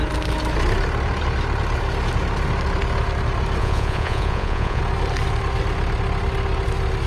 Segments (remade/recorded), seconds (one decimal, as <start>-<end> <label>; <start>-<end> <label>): 0.0-3.6 recorded; 3.6-4.8 remade; 4.8-7.1 recorded